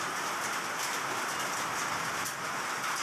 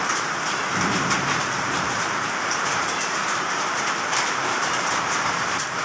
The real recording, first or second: first